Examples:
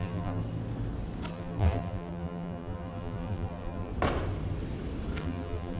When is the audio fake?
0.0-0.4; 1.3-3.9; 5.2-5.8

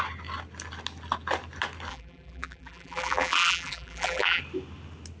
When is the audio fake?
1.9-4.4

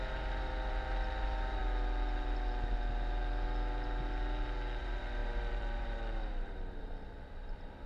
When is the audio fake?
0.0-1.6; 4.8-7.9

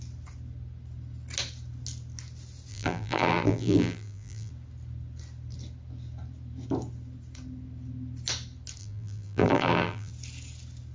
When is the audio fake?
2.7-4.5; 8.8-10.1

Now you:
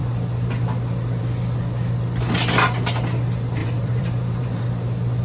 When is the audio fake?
3.6-4.6

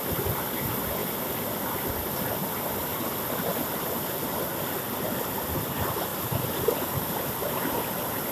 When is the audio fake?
none